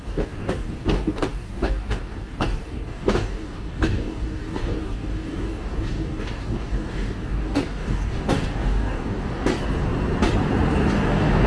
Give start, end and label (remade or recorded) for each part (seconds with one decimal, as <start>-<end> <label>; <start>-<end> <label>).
0.0-9.5 remade; 9.5-10.9 recorded; 10.9-11.5 remade